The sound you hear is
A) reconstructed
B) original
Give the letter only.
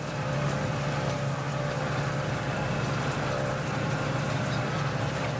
A